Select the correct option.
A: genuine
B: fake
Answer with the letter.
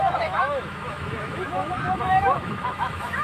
B